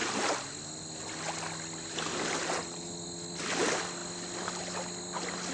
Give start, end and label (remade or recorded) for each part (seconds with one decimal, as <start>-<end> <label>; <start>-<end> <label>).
0.0-5.5 recorded